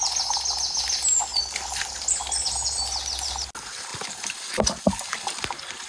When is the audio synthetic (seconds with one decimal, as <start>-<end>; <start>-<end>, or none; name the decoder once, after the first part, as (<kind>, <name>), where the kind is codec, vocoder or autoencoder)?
none